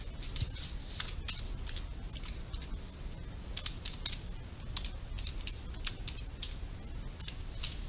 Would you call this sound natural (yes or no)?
yes